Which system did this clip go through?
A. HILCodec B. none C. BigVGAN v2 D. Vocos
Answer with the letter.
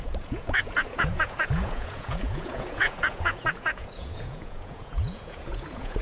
D